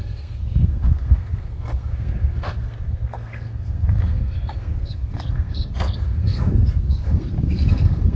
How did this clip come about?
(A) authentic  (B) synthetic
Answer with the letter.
B